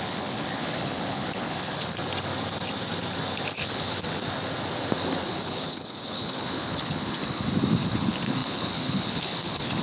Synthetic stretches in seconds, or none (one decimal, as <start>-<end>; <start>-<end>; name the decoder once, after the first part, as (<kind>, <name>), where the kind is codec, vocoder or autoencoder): 0.0-2.0 (codec, HILCodec); 3.6-4.2; 5.2-7.2; 7.9-9.8